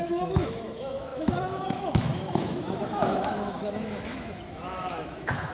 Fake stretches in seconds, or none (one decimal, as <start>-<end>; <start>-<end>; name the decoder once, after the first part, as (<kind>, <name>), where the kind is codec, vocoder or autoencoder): 0.0-5.5 (autoencoder, DAC-VAE)